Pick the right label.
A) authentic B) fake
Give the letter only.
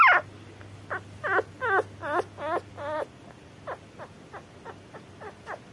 A